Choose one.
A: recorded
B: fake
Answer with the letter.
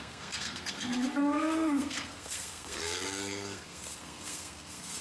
B